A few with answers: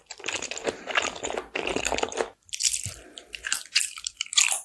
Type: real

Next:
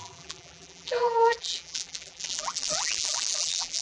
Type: fake